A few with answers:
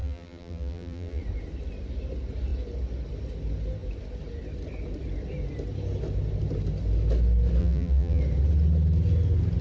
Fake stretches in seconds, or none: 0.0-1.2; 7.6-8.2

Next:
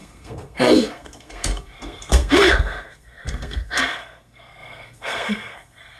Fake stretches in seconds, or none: 0.0-6.0

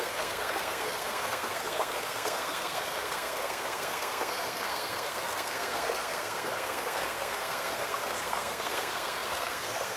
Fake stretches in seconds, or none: 0.0-10.0

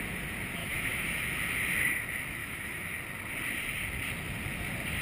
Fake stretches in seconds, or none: 0.6-1.2; 2.4-2.9

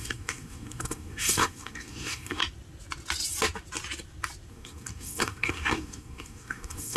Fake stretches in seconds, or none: 0.0-2.4; 4.5-7.0

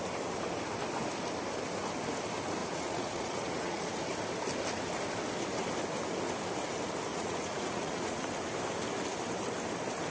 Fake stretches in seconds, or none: 2.6-3.8; 7.1-8.3